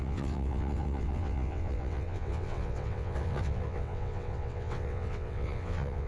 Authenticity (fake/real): fake